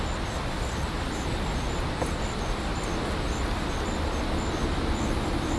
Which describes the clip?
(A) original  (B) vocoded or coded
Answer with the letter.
A